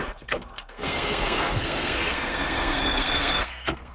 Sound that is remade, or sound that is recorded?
remade